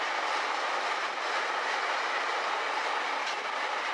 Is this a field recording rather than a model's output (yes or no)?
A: yes